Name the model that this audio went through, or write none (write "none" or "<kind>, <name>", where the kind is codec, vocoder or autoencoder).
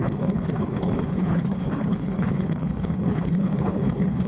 codec, HILCodec